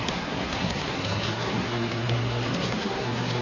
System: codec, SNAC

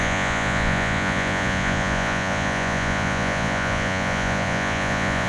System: vocoder, Vocos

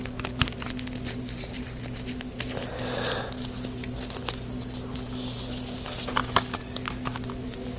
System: none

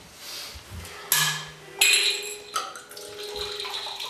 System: none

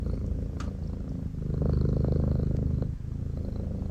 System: none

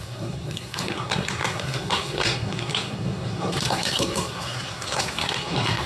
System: codec, SNAC